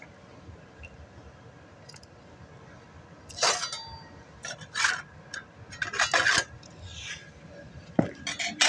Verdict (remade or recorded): recorded